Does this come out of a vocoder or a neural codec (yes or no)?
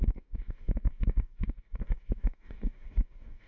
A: yes